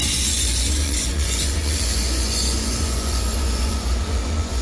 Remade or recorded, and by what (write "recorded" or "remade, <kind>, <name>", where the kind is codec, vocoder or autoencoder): remade, vocoder, Vocos